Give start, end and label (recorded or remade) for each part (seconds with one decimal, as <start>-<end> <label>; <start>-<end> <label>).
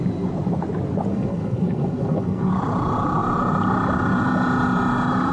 0.0-1.1 recorded; 1.1-2.5 remade; 2.5-5.3 recorded